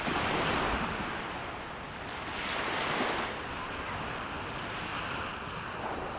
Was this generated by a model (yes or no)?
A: no